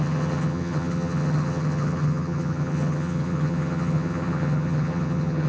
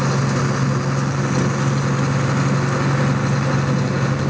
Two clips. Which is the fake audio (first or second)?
first